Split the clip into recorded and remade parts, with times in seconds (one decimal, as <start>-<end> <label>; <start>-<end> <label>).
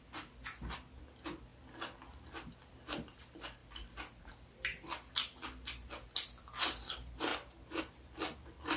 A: 0.0-1.5 recorded; 1.5-2.2 remade; 2.2-3.6 recorded; 3.6-4.2 remade; 4.2-7.3 recorded; 7.3-7.8 remade; 7.8-8.8 recorded